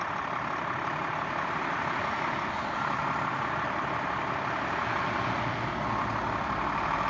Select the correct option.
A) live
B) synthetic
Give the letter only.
A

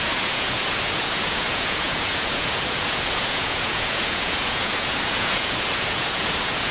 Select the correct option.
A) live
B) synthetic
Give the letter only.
B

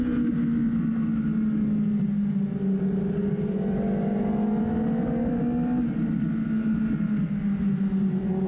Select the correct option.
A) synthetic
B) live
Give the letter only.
B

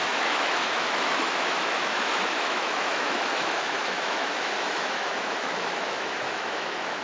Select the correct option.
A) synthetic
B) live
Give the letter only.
A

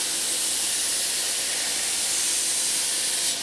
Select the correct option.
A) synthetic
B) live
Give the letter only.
B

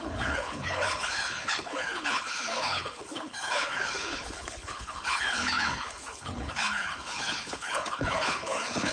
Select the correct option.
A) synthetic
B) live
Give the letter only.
A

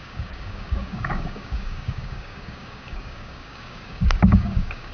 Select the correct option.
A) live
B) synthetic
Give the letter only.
B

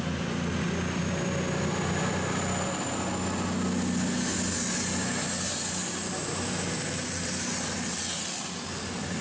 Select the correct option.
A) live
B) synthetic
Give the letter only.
A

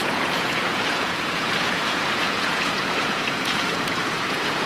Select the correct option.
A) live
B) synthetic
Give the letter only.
B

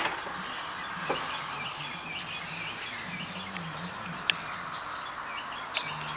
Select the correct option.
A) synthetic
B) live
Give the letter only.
B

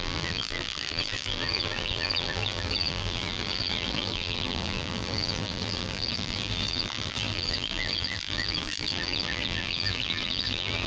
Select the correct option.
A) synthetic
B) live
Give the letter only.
A